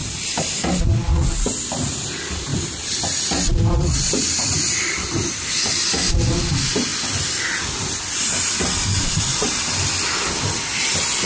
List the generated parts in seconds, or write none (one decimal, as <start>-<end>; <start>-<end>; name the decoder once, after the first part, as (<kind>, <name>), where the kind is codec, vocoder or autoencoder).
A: 2.5-5.1 (vocoder, BigVGAN v2); 6.9-10.3